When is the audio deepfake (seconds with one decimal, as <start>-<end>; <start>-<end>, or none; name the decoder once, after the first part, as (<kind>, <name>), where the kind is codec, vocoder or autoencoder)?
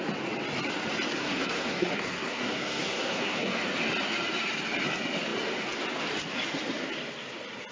1.1-3.5 (codec, SNAC)